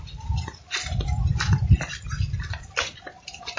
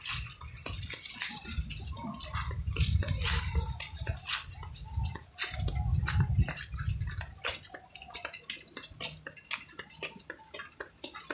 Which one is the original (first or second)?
second